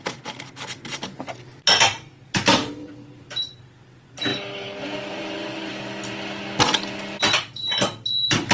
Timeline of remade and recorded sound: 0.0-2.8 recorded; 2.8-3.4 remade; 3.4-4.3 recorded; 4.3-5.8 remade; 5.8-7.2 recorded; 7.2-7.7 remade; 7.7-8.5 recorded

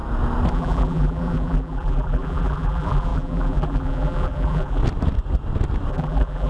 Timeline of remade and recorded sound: 0.0-0.5 recorded; 0.5-4.8 remade; 4.8-5.9 recorded; 5.9-6.5 remade